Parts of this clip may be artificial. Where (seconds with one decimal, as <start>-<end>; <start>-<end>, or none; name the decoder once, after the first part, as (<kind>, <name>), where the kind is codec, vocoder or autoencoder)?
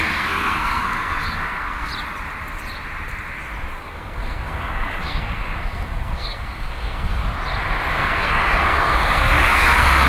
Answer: 0.0-1.9 (codec, SNAC); 3.8-7.2; 7.9-10.1